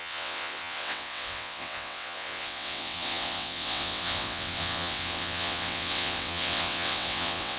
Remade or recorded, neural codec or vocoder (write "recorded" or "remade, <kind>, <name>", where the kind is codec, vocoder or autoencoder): remade, vocoder, WaveNeXt